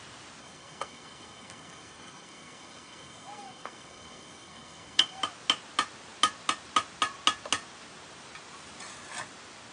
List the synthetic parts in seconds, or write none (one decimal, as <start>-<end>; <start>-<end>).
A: 0.4-5.2